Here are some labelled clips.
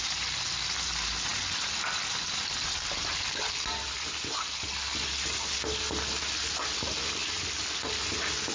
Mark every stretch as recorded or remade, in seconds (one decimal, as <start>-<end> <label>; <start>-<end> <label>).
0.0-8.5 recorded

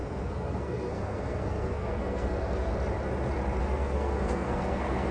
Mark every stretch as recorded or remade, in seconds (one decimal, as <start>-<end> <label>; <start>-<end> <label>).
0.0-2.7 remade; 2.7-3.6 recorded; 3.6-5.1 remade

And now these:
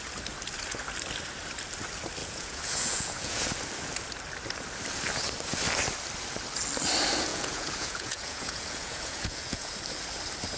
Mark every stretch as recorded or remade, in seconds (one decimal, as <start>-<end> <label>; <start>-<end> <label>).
0.0-2.2 recorded; 2.2-3.5 remade; 3.5-7.3 recorded; 7.3-9.7 remade; 9.7-10.6 recorded

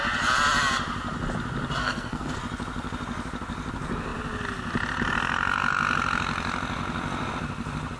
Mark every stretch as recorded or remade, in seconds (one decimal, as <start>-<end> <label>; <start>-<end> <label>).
0.0-1.8 recorded; 1.8-2.4 remade; 2.4-8.0 recorded